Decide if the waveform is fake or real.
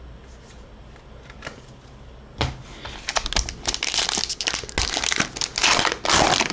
real